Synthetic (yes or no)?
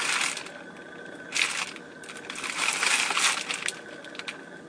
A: no